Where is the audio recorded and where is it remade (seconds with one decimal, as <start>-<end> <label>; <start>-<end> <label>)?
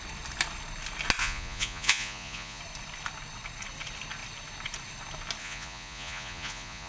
0.0-1.2 recorded; 1.2-2.6 remade; 2.6-5.4 recorded; 5.4-6.9 remade